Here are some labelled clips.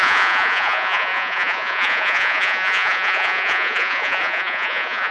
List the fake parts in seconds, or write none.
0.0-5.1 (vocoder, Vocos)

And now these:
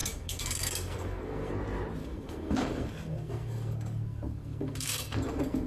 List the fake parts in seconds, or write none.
0.0-1.5 (codec, SNAC); 2.0-5.7